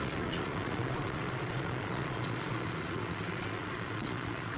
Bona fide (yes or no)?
no